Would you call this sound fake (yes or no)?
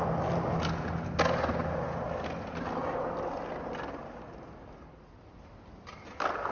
no